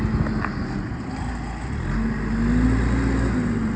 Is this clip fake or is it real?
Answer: real